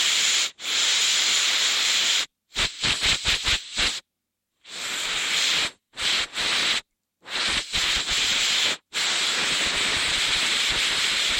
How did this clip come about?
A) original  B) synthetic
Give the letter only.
B